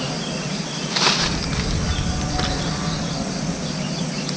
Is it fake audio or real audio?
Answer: real